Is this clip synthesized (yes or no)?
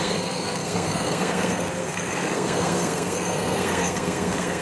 yes